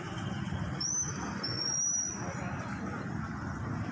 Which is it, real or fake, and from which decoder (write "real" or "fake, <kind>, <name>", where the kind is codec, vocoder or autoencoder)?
real